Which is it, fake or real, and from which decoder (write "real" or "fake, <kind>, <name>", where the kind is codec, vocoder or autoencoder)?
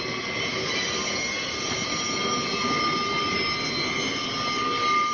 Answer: real